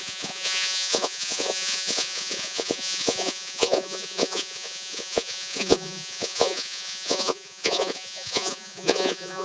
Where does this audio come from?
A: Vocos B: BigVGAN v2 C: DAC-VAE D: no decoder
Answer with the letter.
A